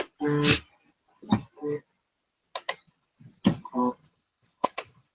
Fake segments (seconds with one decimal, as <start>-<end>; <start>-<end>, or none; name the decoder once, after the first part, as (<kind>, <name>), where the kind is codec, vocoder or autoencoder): 4.0-5.1 (codec, HILCodec)